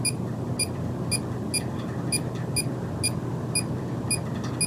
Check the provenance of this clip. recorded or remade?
recorded